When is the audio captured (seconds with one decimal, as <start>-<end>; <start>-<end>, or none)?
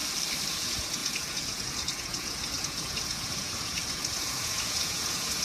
0.0-0.5